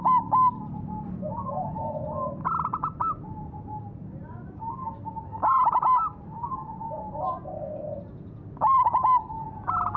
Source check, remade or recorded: recorded